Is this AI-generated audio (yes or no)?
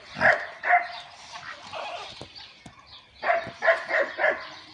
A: no